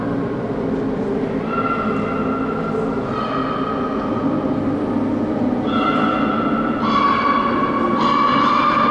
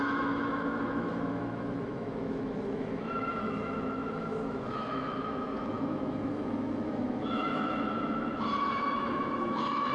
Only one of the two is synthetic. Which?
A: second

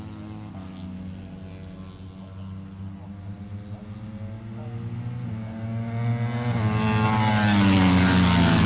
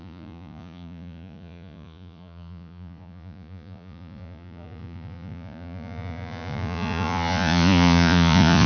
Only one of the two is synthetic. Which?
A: second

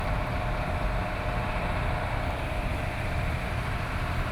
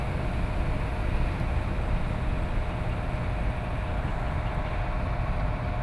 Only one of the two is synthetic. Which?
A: first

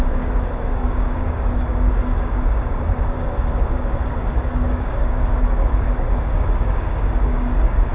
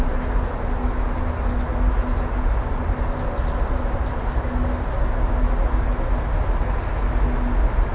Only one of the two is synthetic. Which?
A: first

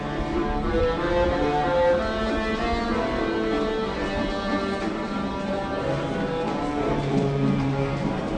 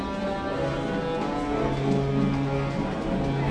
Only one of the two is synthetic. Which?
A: first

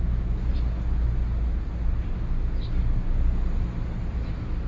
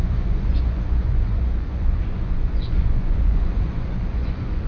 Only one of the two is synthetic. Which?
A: second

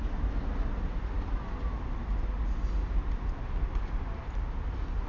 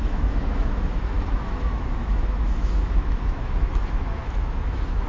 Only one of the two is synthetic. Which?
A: second